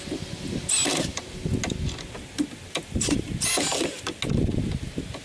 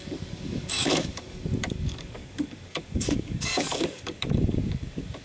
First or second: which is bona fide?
first